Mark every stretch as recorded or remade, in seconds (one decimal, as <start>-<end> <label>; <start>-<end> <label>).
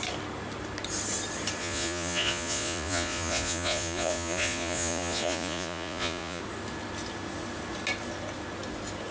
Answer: 0.0-1.6 recorded; 1.6-6.4 remade; 6.4-9.1 recorded